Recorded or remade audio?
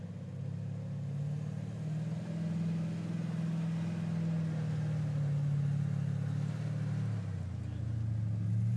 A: recorded